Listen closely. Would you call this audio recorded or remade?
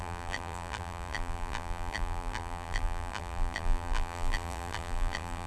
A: remade